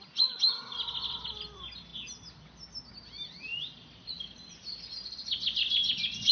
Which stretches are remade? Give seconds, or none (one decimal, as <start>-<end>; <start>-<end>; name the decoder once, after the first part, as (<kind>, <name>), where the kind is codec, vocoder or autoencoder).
none